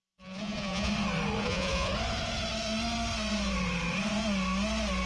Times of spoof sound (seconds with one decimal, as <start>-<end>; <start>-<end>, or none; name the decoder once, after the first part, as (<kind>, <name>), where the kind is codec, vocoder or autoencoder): 0.0-0.9 (vocoder, Vocos); 1.4-1.9